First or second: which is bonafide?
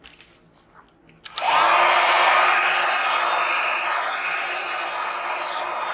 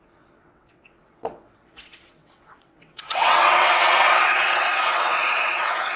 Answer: first